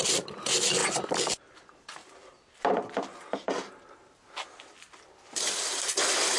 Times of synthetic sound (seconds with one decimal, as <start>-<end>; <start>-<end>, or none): none